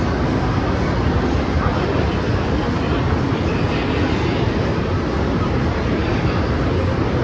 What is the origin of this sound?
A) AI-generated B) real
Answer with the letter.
B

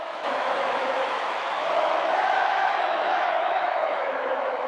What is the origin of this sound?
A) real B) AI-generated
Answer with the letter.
B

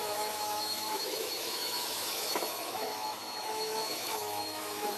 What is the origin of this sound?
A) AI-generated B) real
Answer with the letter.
A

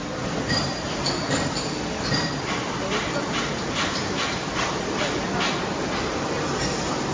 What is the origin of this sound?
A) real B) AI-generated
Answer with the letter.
A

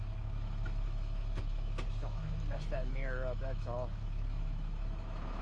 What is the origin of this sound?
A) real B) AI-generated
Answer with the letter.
B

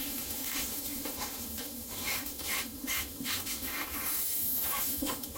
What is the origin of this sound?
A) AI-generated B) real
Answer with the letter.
A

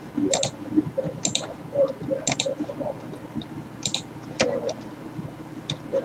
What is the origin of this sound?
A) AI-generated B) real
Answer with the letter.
B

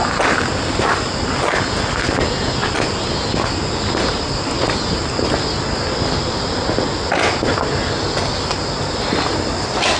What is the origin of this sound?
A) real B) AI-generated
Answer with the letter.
A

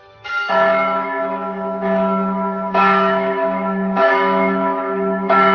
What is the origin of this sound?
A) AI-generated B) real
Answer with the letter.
A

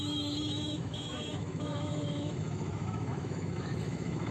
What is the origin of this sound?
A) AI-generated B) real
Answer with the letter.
A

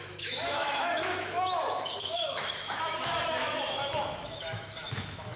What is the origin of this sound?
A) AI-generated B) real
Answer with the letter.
A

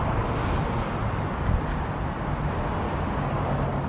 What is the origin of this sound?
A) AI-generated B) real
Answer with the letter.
B